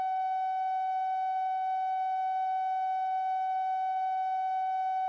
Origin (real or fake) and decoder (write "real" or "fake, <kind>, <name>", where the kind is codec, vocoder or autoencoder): fake, autoencoder, DAC-VAE